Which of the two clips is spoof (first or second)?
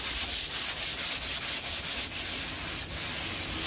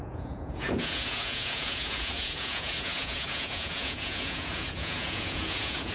second